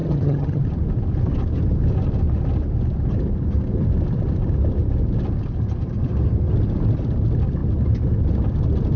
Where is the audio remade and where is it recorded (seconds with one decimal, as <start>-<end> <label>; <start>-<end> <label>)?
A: 0.0-0.6 remade; 0.6-9.0 recorded

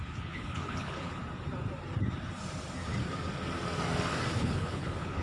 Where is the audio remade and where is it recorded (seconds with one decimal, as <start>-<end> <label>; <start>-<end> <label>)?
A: 0.0-1.2 remade; 1.2-4.3 recorded; 4.3-5.2 remade

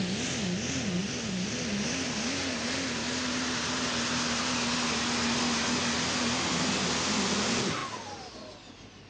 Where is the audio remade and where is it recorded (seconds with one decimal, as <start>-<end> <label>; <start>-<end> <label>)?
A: 0.0-1.0 recorded; 1.0-4.4 remade; 4.4-5.8 recorded; 5.8-6.7 remade; 6.7-7.8 recorded; 7.8-8.3 remade; 8.3-9.1 recorded

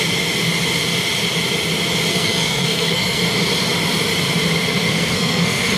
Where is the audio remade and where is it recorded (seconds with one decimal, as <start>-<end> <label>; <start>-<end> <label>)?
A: 0.0-2.1 recorded; 2.1-3.2 remade; 3.2-4.8 recorded; 4.8-5.8 remade

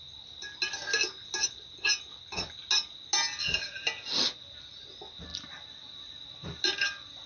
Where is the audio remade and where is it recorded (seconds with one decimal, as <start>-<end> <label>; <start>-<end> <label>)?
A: 0.0-7.3 recorded